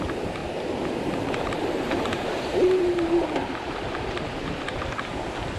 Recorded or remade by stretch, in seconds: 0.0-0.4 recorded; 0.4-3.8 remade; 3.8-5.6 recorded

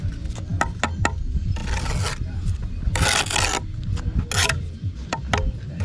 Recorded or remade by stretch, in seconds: 0.0-4.4 recorded; 4.4-5.8 remade